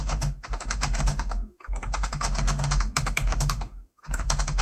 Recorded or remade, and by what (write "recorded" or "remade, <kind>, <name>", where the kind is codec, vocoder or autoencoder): remade, autoencoder, DAC-VAE